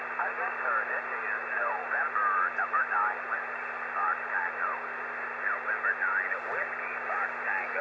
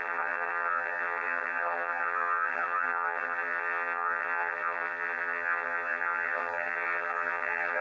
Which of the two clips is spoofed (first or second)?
second